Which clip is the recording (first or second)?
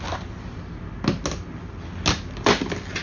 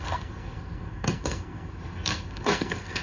first